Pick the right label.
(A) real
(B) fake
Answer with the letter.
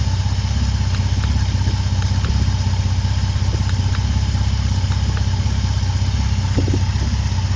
A